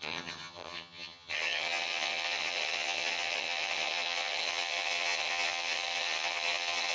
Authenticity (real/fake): fake